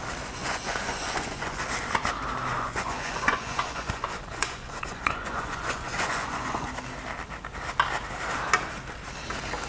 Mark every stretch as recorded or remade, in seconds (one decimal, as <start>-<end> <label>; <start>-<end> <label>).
0.0-0.4 recorded; 0.4-1.6 remade; 1.6-2.5 recorded; 2.5-6.7 remade; 6.7-9.7 recorded